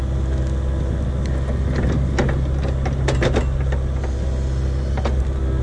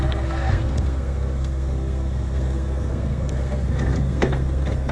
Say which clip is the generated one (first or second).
second